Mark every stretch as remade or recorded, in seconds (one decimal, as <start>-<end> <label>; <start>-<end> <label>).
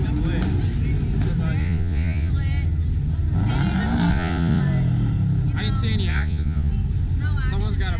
0.0-1.6 recorded; 1.6-2.3 remade; 2.3-4.1 recorded; 4.1-4.6 remade; 4.6-6.1 recorded; 6.1-6.7 remade; 6.7-8.0 recorded